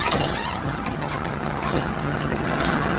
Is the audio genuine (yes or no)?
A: no